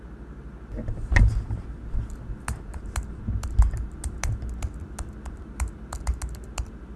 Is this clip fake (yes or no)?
no